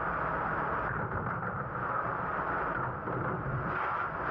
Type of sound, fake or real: real